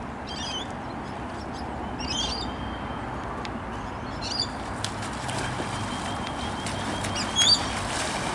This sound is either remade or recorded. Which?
recorded